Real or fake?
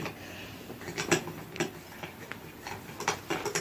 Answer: real